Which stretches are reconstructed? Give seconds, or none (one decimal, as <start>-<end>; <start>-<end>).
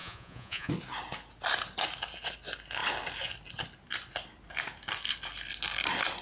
0.0-0.7